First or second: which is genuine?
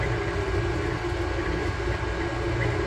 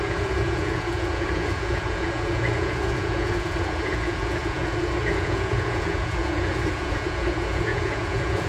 first